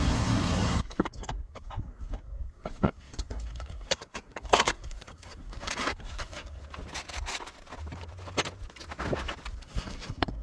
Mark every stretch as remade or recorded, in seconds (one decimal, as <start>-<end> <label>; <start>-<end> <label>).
0.0-6.6 remade; 6.6-9.6 recorded; 9.6-10.4 remade